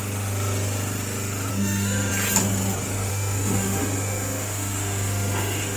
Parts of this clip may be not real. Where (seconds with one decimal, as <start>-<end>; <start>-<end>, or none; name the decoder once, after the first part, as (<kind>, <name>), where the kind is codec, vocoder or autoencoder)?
1.5-2.1 (autoencoder, DAC-VAE); 3.1-5.8